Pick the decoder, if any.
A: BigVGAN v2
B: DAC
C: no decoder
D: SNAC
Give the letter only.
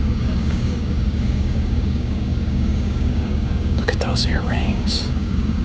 B